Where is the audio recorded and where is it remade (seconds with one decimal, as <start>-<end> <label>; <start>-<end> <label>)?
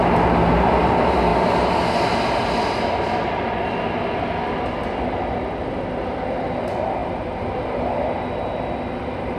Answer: 0.0-9.4 recorded